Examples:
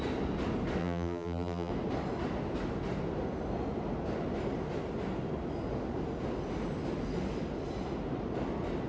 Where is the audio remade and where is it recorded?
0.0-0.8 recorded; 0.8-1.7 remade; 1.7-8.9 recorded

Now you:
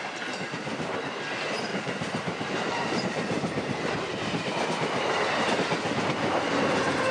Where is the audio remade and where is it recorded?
0.0-1.7 recorded; 1.7-4.5 remade; 4.5-7.1 recorded

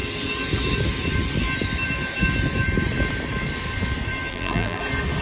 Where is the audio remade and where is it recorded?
0.0-4.3 recorded; 4.3-4.8 remade; 4.8-5.2 recorded

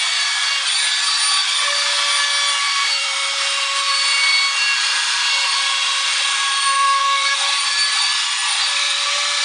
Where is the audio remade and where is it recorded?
0.0-0.5 remade; 0.5-2.6 recorded; 2.6-9.4 remade

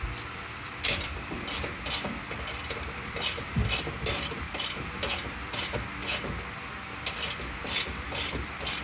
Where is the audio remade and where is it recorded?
0.0-6.0 remade; 6.0-7.6 recorded; 7.6-8.8 remade